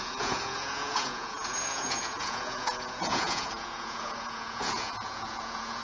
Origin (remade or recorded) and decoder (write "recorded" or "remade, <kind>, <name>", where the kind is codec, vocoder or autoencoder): remade, vocoder, Vocos